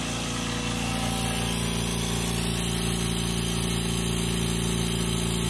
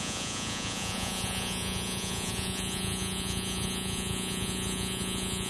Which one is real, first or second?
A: first